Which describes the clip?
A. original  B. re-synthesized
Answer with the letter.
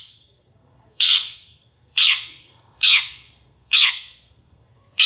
B